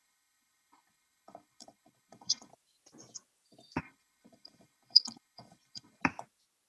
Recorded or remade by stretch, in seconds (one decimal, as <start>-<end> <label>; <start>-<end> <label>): 0.0-2.5 remade; 2.5-3.8 recorded; 3.8-6.0 remade; 6.0-6.7 recorded